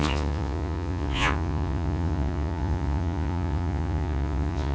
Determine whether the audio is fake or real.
fake